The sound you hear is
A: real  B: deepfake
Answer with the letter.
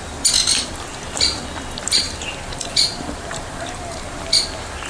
A